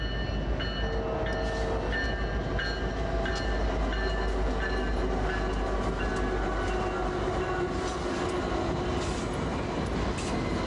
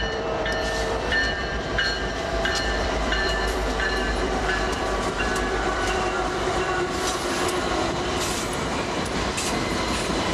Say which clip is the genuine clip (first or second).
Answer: first